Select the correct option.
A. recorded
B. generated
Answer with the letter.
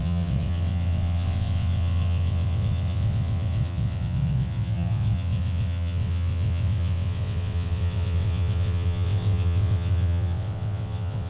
B